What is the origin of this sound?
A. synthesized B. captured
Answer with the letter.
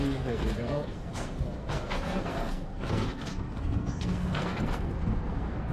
A